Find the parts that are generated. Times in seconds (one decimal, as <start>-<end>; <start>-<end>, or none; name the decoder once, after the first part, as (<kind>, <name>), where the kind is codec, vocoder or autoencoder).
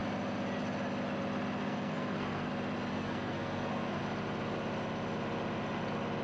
1.6-2.5 (codec, SNAC); 2.9-4.0